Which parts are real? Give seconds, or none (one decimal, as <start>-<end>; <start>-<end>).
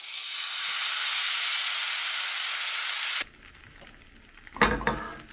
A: 0.0-5.3